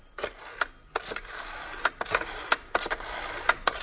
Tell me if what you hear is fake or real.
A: real